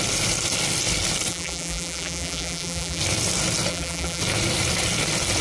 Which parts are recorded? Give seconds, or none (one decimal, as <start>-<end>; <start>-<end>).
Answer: 0.0-1.3; 3.0-3.7; 4.2-5.4